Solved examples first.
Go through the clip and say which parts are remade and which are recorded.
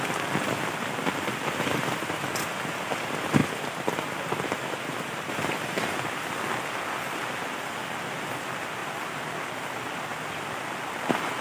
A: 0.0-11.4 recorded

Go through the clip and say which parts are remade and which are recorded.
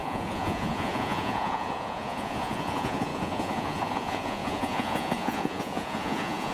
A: 0.0-6.5 remade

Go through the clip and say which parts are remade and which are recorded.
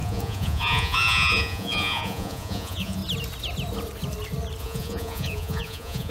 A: 0.0-3.0 remade; 3.0-4.6 recorded; 4.6-6.1 remade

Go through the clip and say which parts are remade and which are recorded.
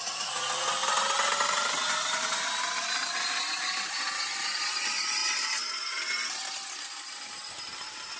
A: 0.0-8.2 recorded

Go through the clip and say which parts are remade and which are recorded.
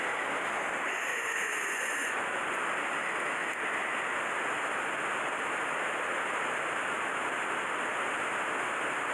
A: 0.0-1.1 recorded; 1.1-2.6 remade; 2.6-9.1 recorded